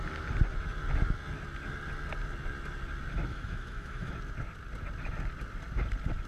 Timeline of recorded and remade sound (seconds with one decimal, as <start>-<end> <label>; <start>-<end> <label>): 0.0-3.3 recorded; 3.3-4.1 remade; 4.1-6.3 recorded